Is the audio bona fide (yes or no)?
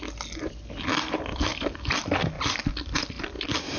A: yes